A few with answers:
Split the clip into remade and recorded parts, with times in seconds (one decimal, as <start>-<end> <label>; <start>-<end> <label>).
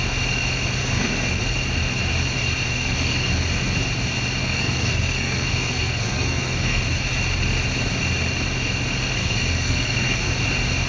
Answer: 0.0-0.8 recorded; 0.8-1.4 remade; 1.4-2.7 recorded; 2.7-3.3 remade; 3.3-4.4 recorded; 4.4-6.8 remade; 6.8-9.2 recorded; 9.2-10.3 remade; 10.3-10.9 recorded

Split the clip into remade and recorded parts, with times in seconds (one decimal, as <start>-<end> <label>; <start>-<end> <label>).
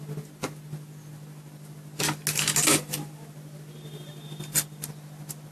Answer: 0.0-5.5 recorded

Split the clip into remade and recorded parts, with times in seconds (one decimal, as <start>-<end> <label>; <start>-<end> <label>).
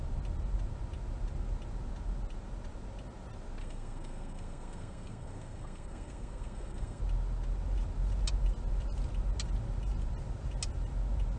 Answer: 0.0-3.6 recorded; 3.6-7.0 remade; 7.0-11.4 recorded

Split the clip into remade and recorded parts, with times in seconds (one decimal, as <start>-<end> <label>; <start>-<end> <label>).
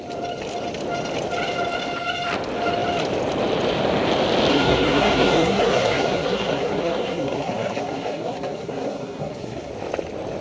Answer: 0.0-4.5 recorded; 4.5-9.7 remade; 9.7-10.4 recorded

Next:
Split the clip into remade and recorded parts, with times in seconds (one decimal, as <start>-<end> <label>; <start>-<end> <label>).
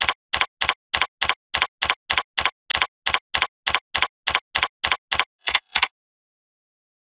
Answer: 0.0-5.4 recorded; 5.4-5.9 remade; 5.9-7.1 recorded